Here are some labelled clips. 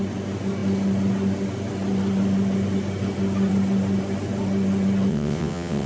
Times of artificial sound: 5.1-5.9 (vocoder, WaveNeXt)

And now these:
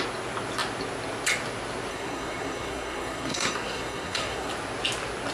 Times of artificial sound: 1.9-4.5 (codec, SNAC)

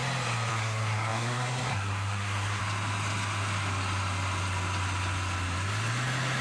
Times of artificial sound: 0.5-2.6 (codec, SNAC)